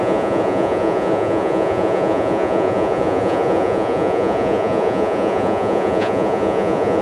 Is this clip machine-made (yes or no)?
yes